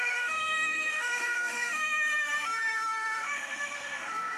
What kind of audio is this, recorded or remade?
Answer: remade